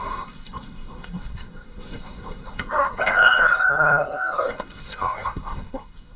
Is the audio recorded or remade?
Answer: remade